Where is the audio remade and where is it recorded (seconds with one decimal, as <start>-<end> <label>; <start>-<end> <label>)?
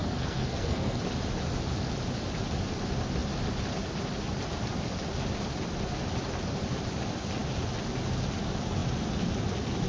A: 0.0-1.0 remade; 1.0-9.9 recorded